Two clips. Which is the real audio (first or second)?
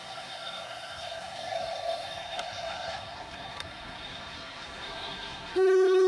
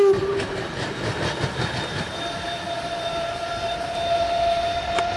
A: second